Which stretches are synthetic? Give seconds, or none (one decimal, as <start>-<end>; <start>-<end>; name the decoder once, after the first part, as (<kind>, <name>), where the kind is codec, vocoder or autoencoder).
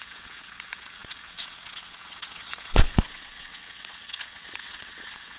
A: 0.0-5.4 (vocoder, WaveNeXt)